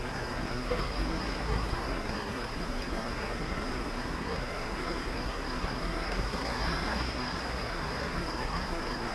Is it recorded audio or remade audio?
remade